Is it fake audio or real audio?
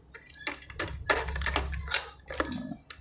real